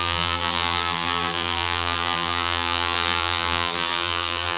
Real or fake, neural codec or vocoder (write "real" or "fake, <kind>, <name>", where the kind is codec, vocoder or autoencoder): fake, vocoder, BigVGAN v2